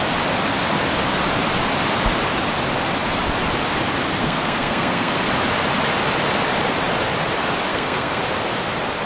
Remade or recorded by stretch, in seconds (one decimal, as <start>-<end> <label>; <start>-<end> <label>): 0.0-4.2 recorded; 4.2-5.3 remade; 5.3-7.7 recorded; 7.7-8.2 remade; 8.2-9.1 recorded